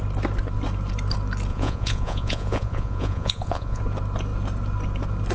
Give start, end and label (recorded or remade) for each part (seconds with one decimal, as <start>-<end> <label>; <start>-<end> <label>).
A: 0.0-1.5 recorded; 1.5-3.8 remade; 3.8-5.3 recorded